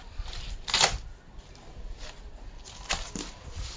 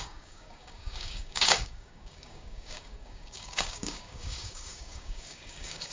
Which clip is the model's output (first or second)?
second